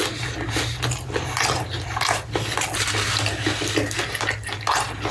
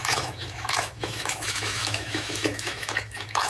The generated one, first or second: second